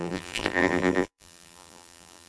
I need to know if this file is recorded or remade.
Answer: remade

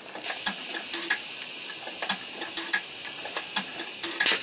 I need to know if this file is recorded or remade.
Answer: recorded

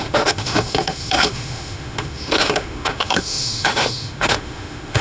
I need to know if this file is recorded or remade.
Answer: remade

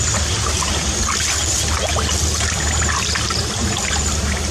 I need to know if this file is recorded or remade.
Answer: recorded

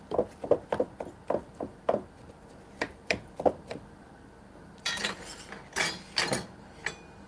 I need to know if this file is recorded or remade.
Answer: recorded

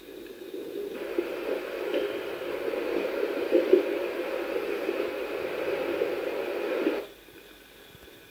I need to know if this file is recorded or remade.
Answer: recorded